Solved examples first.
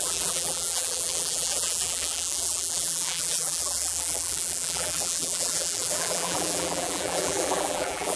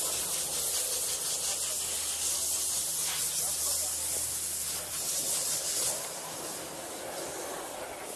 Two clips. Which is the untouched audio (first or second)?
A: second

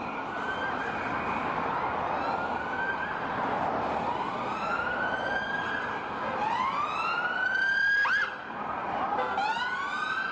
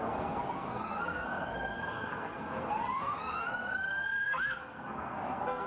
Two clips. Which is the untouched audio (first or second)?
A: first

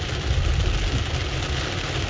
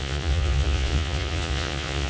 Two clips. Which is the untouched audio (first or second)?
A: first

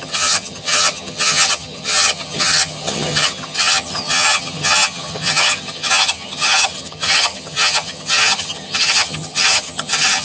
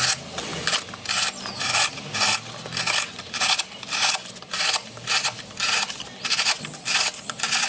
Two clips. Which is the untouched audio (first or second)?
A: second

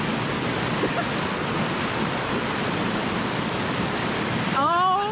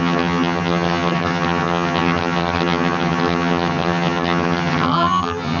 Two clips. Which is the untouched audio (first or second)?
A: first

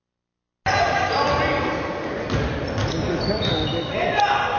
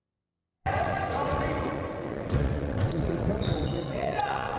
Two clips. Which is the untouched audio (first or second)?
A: first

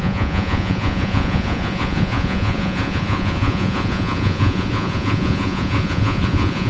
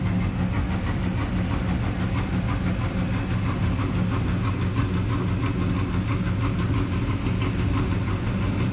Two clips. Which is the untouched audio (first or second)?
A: second